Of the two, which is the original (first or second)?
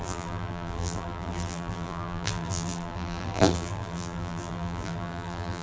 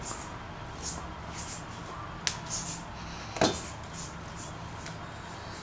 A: second